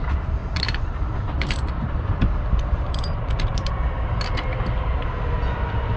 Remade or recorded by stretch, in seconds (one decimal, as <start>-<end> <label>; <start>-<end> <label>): 0.0-0.4 recorded; 0.4-3.7 remade; 3.7-6.0 recorded